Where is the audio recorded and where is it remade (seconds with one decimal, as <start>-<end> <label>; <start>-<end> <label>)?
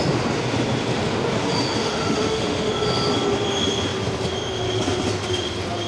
0.0-1.8 recorded; 1.8-2.7 remade; 2.7-5.9 recorded